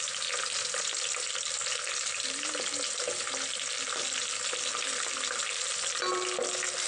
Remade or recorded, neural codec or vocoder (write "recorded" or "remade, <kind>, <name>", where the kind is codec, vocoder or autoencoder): recorded